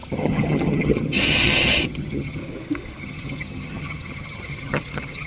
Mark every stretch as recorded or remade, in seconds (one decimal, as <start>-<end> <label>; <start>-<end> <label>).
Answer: 0.0-2.4 remade; 2.4-3.0 recorded; 3.0-5.3 remade